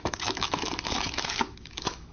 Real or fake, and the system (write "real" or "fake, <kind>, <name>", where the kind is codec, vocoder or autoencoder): fake, autoencoder, DAC-VAE